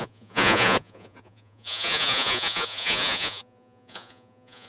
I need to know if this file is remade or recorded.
remade